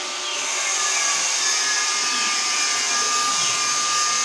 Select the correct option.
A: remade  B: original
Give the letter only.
B